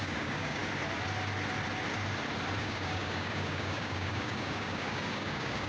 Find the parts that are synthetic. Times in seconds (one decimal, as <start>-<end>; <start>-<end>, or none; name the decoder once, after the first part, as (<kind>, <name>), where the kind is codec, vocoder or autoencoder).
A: 0.0-0.6 (codec, DAC); 2.6-5.7